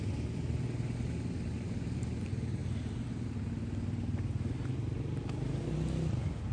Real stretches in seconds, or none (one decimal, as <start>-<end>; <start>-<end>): 0.0-6.5